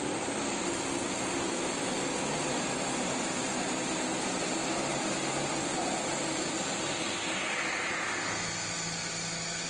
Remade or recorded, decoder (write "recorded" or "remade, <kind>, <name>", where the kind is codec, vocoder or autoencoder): recorded